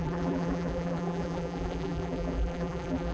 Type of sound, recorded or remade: remade